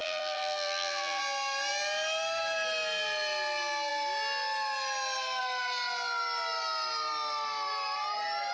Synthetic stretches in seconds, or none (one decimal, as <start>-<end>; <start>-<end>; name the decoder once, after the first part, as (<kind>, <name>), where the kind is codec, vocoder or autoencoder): 0.0-1.2 (vocoder, BigVGAN v2)